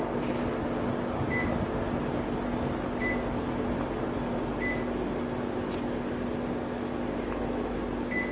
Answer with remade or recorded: recorded